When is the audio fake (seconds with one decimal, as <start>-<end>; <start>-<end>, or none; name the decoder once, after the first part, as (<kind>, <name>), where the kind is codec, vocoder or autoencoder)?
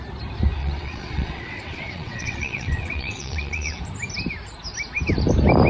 0.6-3.8 (vocoder, WaveNeXt)